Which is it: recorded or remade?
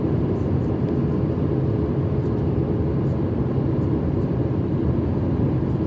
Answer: recorded